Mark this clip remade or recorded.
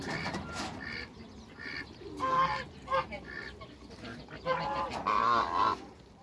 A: recorded